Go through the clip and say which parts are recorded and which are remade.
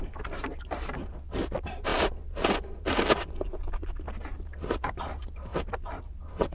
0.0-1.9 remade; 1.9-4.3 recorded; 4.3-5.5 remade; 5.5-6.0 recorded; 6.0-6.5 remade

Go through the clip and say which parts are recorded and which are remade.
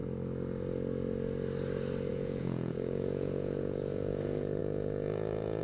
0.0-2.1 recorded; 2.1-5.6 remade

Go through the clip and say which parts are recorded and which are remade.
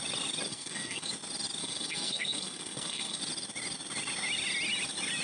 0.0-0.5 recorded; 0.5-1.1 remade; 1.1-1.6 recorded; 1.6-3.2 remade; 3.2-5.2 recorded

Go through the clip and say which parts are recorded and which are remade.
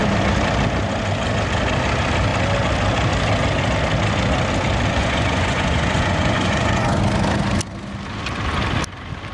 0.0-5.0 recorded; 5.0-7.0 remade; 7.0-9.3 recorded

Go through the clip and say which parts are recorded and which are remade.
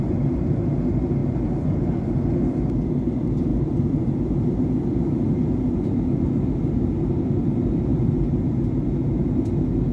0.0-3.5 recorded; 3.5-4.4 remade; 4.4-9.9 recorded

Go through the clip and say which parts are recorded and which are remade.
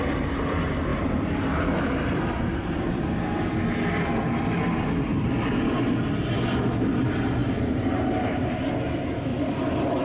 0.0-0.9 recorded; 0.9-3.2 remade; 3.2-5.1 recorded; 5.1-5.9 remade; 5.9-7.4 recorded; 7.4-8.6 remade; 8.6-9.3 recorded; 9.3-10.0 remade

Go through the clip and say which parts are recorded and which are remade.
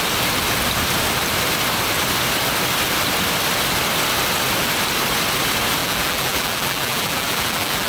0.0-5.8 recorded; 5.8-7.9 remade